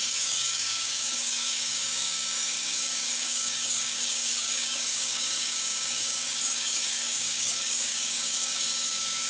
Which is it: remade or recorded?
remade